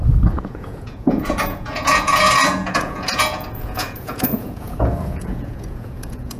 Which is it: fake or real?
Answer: fake